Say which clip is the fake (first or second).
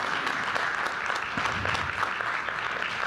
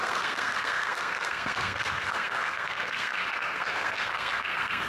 second